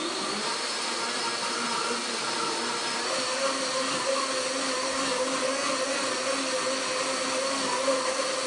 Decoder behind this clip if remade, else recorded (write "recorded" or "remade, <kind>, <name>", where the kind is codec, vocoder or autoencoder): recorded